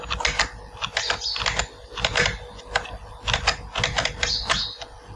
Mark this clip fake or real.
real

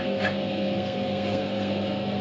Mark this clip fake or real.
fake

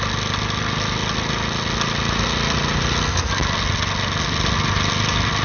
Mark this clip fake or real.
real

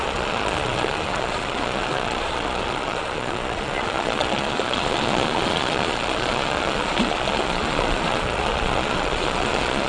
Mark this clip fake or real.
fake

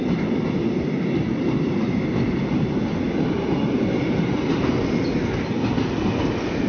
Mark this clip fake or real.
real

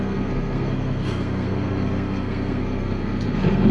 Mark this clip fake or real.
fake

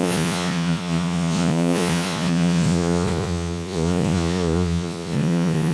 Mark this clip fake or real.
fake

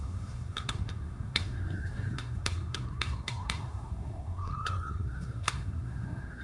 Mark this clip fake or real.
fake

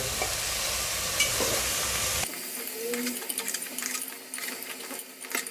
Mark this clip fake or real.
real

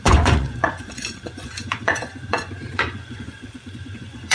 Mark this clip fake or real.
fake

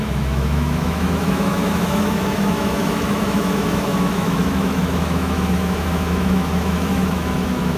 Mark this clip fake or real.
fake